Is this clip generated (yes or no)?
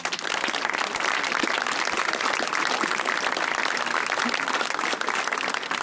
no